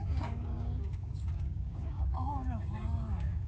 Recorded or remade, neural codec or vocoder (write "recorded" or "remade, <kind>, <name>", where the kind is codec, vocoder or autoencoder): remade, codec, DAC